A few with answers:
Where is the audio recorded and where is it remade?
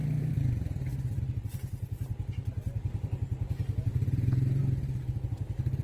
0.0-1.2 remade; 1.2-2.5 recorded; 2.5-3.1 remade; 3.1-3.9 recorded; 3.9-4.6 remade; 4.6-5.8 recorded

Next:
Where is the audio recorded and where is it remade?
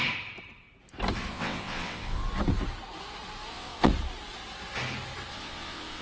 0.0-1.3 recorded; 1.3-2.2 remade; 2.2-3.5 recorded; 3.5-3.9 remade; 3.9-5.3 recorded; 5.3-6.0 remade